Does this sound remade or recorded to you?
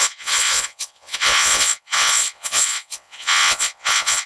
remade